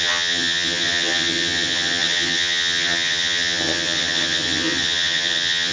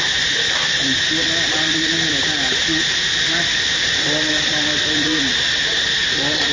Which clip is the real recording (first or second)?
second